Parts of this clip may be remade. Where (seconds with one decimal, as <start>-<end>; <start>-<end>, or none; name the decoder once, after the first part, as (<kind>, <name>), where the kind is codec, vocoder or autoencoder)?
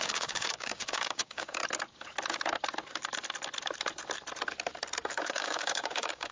0.0-1.6 (codec, DAC); 5.1-6.3